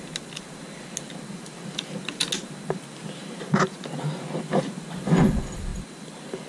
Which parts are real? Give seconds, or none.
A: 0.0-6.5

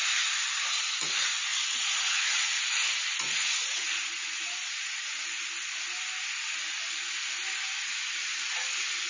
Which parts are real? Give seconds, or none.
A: 0.0-1.5; 5.2-9.1

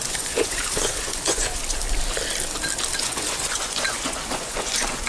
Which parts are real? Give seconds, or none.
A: 1.6-3.0

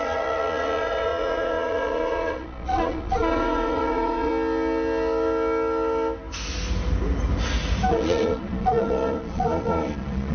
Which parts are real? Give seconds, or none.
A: 4.3-7.9

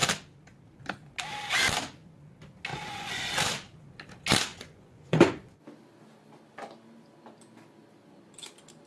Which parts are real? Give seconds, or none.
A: 0.0-2.7; 3.3-4.5; 5.6-8.9